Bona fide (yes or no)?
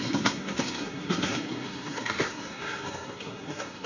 no